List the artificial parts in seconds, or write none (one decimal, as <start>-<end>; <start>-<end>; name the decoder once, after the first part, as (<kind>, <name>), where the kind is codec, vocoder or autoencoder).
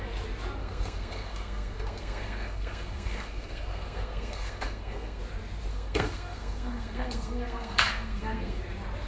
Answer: 0.6-5.2 (codec, SNAC); 5.7-8.6